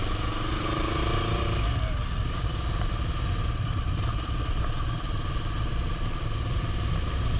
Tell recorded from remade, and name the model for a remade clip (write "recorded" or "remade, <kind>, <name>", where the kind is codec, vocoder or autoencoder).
recorded